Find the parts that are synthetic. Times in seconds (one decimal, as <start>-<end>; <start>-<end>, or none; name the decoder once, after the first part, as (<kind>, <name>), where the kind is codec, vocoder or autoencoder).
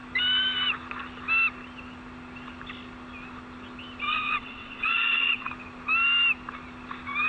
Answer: 4.1-5.5 (vocoder, WaveNeXt)